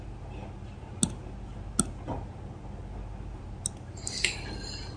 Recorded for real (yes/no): yes